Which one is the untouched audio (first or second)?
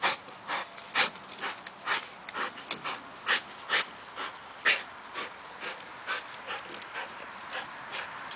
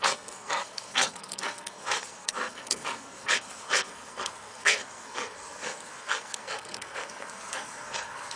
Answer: first